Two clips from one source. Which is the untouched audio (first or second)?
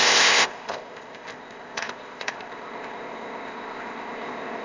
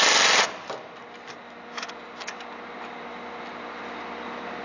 second